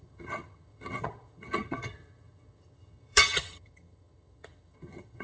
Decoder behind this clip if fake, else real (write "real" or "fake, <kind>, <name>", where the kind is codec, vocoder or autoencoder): fake, vocoder, HiFi-GAN